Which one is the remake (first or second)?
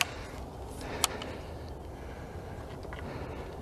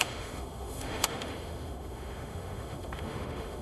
second